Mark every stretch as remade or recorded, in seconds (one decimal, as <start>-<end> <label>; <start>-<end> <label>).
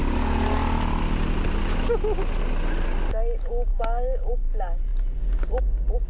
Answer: 0.0-6.1 recorded